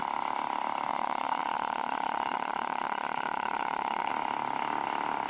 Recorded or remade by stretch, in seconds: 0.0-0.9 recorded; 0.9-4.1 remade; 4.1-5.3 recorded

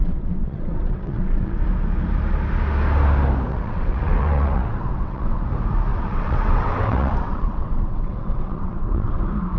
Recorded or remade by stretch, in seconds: 0.0-1.6 remade; 1.6-3.5 recorded; 3.5-5.4 remade; 5.4-5.9 recorded; 5.9-9.2 remade; 9.2-9.6 recorded

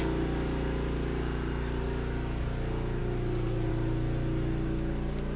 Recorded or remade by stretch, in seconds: 0.0-5.4 recorded

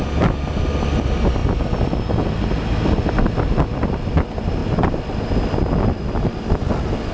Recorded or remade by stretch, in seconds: 0.0-7.1 recorded

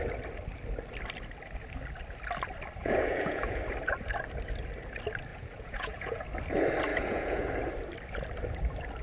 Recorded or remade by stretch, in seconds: 0.0-2.8 recorded; 2.8-3.6 remade; 3.6-5.3 recorded; 5.3-6.2 remade; 6.2-6.9 recorded; 6.9-7.5 remade; 7.5-9.0 recorded